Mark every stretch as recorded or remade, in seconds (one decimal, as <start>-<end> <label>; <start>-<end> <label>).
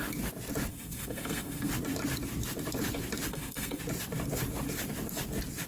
0.0-0.7 recorded; 0.7-1.7 remade; 1.7-3.3 recorded; 3.3-3.8 remade; 3.8-5.7 recorded